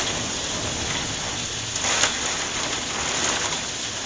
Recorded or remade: recorded